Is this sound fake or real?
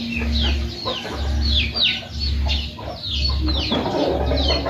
real